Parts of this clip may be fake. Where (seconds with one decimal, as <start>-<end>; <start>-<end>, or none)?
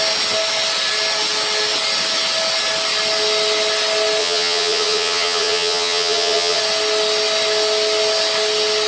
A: 4.2-6.6